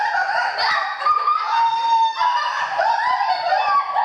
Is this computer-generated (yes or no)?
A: no